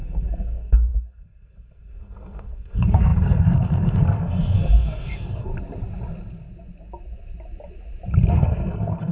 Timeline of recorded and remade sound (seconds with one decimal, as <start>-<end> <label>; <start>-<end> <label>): 0.0-5.5 remade; 5.5-8.3 recorded; 8.3-9.1 remade

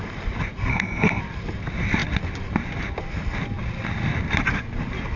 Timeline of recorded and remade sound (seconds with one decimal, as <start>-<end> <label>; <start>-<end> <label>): 0.0-0.7 recorded; 0.7-1.2 remade; 1.2-5.2 recorded

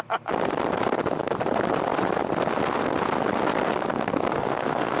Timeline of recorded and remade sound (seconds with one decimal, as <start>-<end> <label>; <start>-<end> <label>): 0.0-4.3 recorded; 4.3-5.0 remade

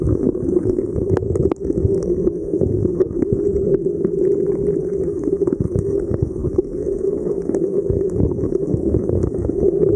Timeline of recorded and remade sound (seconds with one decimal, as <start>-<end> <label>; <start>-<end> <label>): 0.0-4.1 remade; 4.1-4.8 recorded; 4.8-10.0 remade

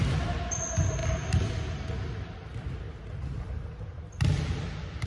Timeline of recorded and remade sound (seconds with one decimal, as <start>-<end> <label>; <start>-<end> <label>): 0.0-5.1 recorded

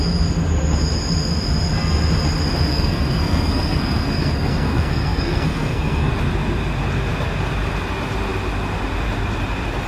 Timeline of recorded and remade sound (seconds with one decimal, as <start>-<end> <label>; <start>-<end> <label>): 0.0-2.7 recorded; 2.7-6.1 remade; 6.1-9.9 recorded